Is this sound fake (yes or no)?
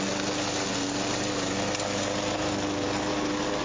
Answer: no